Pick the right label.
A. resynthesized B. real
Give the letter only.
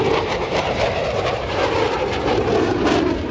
A